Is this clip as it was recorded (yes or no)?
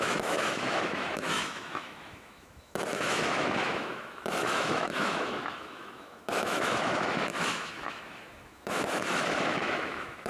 no